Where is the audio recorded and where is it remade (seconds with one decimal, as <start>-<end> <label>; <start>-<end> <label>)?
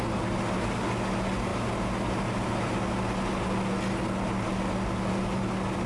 0.0-5.9 recorded